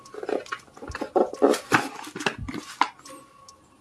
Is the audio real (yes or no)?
yes